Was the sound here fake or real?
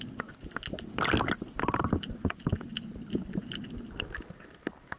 real